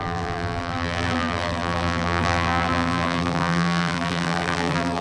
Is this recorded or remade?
remade